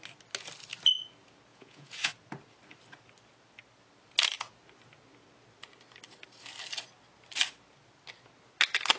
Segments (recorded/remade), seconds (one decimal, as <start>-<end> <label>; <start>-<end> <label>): 0.0-1.5 recorded; 1.5-2.1 remade; 2.1-9.0 recorded